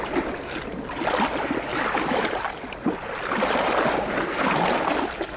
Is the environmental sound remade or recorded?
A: recorded